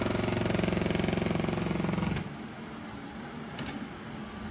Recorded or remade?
recorded